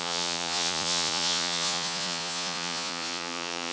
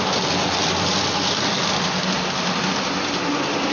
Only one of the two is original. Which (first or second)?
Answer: second